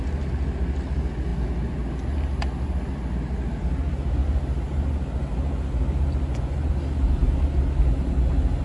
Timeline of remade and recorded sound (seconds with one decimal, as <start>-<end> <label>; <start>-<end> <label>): 0.0-8.6 recorded